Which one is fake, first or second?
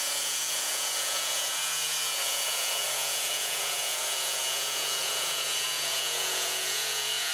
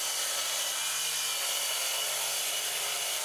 first